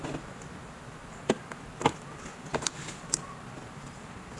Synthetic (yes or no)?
no